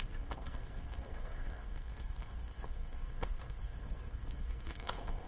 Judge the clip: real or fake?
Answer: fake